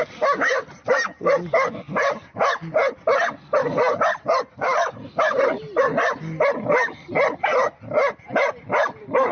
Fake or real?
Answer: real